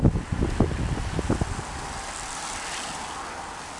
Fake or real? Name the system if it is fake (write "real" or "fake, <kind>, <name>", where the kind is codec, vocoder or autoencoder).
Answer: real